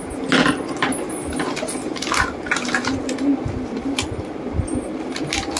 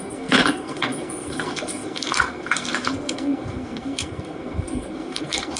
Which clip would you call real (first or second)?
first